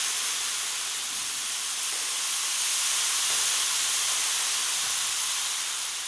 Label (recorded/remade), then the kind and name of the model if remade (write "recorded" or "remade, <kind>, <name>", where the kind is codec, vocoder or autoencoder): recorded